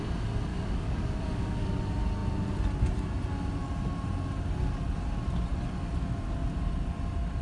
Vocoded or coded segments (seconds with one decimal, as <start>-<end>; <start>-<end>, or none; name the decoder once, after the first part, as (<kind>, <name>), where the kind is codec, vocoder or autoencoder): 0.5-1.8 (codec, DAC)